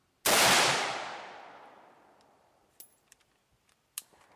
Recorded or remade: recorded